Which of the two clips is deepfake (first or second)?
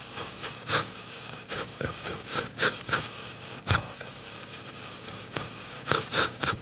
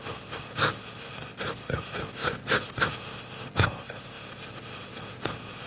first